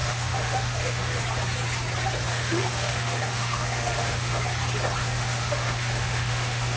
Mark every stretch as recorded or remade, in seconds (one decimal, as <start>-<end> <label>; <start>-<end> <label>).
0.0-1.2 remade; 1.2-2.3 recorded; 2.3-4.4 remade; 4.4-5.0 recorded; 5.0-6.8 remade